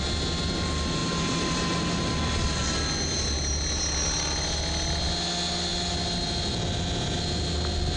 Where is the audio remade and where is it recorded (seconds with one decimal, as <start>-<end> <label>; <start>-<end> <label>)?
0.0-8.0 recorded